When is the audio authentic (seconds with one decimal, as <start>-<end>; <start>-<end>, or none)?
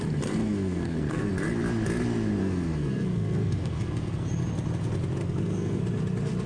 0.0-0.4; 1.3-2.4; 4.3-5.2; 5.8-6.5